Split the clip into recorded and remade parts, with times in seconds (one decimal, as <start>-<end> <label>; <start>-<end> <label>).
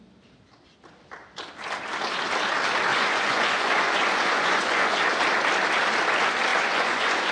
0.0-2.9 recorded; 2.9-5.0 remade; 5.0-6.5 recorded; 6.5-7.3 remade